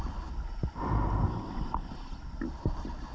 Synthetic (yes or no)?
no